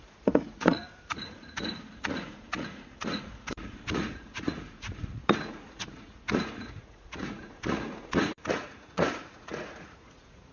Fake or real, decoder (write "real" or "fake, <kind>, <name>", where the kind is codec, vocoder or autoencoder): fake, vocoder, Vocos